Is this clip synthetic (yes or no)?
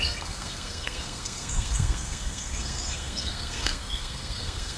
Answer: yes